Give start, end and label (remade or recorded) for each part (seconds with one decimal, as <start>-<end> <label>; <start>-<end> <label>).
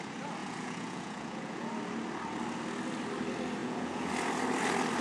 0.0-0.4 recorded; 0.4-1.7 remade; 1.7-3.6 recorded; 3.6-4.1 remade; 4.1-5.0 recorded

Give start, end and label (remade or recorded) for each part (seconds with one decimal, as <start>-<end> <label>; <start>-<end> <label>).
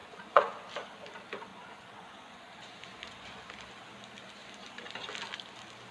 0.0-0.6 remade; 0.6-1.5 recorded; 1.5-3.5 remade; 3.5-5.9 recorded